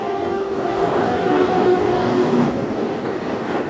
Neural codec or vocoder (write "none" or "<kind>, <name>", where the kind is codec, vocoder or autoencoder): codec, DAC